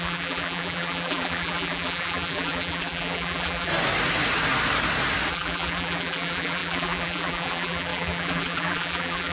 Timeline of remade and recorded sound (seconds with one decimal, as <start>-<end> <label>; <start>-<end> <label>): 0.0-3.7 remade; 3.7-5.3 recorded; 5.3-9.3 remade